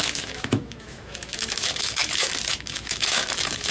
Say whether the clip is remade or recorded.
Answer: remade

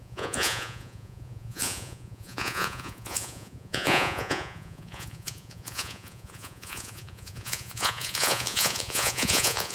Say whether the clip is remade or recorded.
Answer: remade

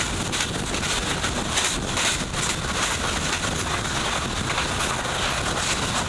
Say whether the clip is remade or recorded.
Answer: recorded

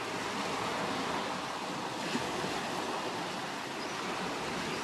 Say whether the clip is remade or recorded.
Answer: recorded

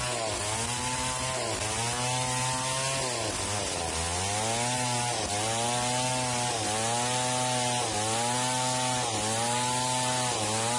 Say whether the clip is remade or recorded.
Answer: recorded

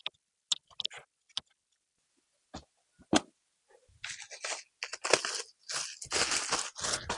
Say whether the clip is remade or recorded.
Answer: recorded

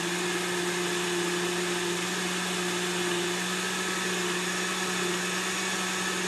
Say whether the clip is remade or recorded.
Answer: recorded